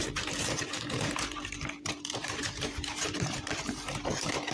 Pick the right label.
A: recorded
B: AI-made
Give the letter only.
B